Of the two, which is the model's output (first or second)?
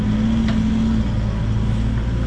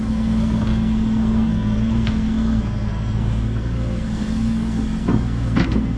second